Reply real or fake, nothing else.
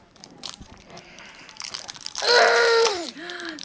fake